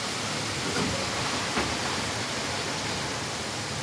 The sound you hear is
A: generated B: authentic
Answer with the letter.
B